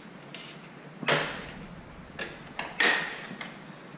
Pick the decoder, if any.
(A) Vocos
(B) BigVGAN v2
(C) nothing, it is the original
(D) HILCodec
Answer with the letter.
C